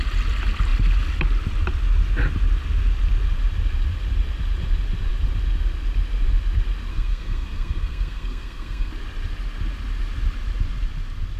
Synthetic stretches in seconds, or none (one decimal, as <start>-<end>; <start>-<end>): 6.9-8.9